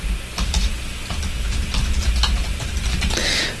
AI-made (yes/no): no